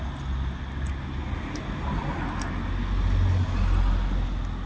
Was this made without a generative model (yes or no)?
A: yes